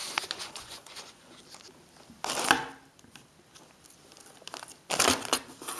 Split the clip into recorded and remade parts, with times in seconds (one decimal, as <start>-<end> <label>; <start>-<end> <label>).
0.0-1.4 remade; 1.4-5.8 recorded